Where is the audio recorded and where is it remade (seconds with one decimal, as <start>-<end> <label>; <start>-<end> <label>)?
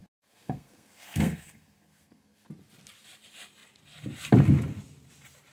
0.0-2.5 remade; 2.5-5.5 recorded